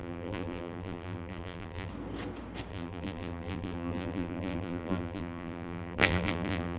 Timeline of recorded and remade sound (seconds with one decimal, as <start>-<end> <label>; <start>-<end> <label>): 0.0-1.9 remade; 1.9-2.7 recorded; 2.7-6.8 remade